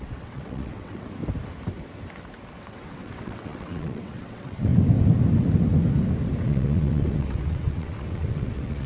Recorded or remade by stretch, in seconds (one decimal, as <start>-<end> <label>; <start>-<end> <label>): 0.0-1.2 remade; 1.2-2.6 recorded; 2.6-4.7 remade; 4.7-6.4 recorded; 6.4-8.9 remade